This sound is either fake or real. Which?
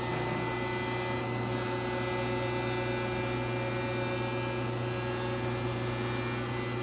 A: real